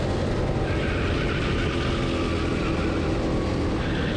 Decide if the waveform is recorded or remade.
recorded